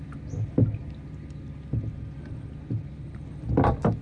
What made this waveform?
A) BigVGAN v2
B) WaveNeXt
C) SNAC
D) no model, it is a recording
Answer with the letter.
D